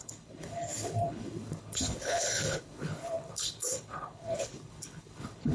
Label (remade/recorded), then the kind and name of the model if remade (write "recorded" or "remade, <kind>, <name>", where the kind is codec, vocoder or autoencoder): remade, codec, HILCodec